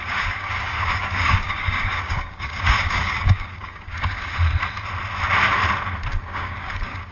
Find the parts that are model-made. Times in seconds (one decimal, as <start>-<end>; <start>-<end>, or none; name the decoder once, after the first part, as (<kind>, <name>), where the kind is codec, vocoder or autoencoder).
0.0-4.3 (codec, DAC); 6.1-7.1

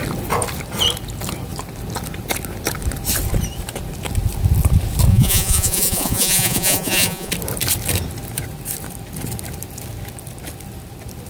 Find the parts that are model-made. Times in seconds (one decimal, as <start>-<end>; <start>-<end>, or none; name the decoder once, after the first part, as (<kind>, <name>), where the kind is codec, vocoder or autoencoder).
5.1-7.3 (vocoder, Vocos)

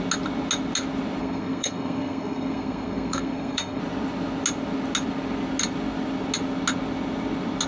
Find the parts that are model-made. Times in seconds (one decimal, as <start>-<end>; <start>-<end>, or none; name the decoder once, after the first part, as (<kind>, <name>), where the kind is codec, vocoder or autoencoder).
1.2-3.8 (codec, SNAC)

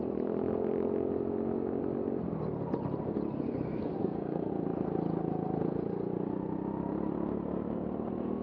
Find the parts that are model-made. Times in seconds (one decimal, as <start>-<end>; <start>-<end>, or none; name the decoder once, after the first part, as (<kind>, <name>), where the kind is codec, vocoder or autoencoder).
4.0-4.5 (codec, SNAC)

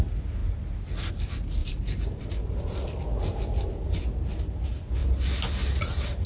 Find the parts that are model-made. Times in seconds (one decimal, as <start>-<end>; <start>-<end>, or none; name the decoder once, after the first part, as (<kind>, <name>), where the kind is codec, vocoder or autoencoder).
1.6-2.2 (vocoder, BigVGAN v2)